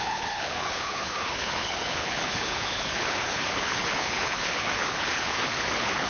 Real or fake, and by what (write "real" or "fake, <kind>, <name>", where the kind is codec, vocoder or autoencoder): fake, codec, HILCodec